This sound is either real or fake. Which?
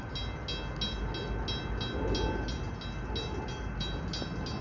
real